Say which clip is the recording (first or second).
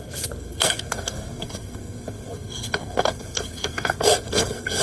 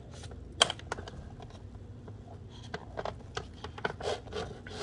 second